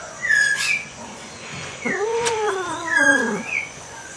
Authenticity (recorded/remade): remade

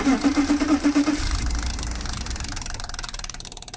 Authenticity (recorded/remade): remade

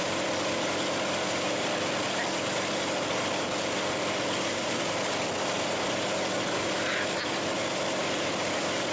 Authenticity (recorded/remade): recorded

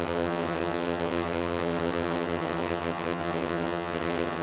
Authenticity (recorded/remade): remade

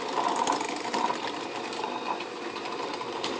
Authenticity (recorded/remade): remade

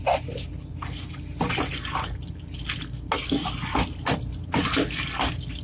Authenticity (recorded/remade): recorded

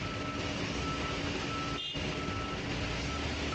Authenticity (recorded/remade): recorded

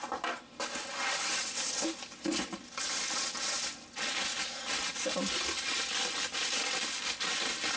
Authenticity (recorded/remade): recorded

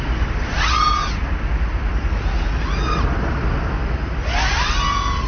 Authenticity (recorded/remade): recorded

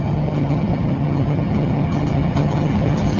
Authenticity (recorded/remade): remade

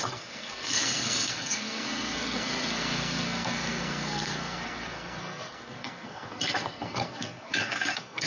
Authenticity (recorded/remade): remade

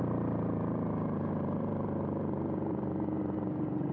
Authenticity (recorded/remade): remade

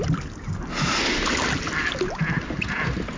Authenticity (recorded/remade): recorded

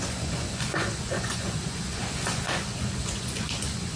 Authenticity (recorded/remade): remade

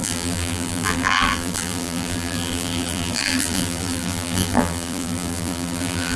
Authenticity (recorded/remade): remade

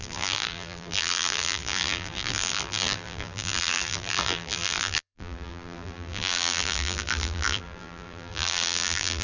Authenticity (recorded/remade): remade